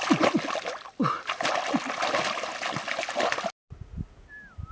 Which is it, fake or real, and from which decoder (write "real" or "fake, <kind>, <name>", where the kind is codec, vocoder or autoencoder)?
real